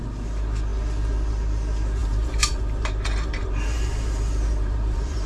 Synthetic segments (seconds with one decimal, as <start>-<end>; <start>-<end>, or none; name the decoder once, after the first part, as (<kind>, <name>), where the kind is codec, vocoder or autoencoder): 2.0-5.3 (vocoder, BigVGAN v2)